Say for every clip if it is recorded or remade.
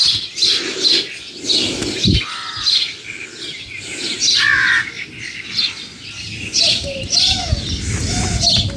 recorded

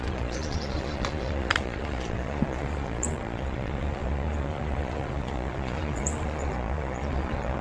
remade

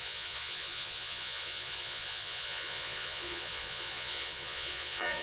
remade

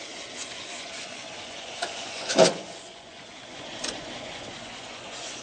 remade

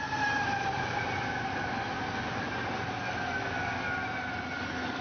recorded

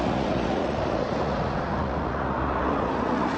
remade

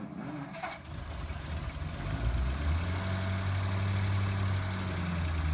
recorded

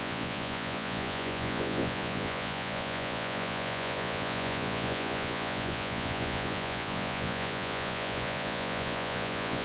remade